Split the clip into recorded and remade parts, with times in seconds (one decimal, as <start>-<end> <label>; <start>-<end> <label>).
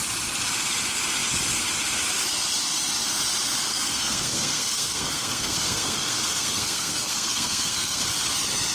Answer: 0.0-3.7 recorded; 3.7-8.0 remade; 8.0-8.7 recorded